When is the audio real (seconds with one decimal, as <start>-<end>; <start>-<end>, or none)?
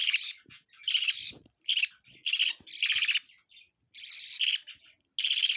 1.2-5.6